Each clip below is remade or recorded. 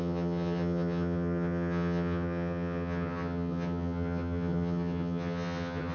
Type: remade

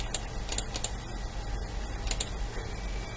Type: recorded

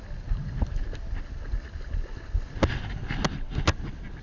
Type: recorded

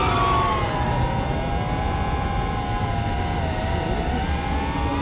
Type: recorded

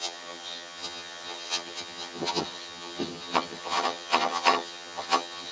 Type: remade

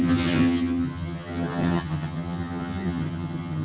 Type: remade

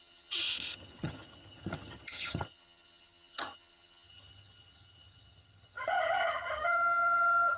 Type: remade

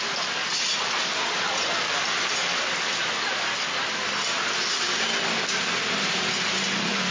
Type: recorded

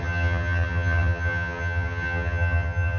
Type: remade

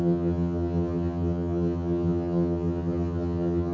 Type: remade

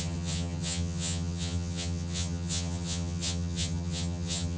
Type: remade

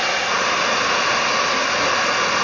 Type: recorded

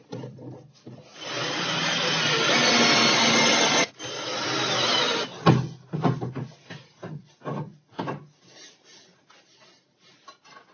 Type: recorded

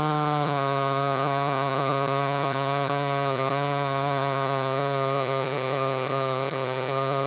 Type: remade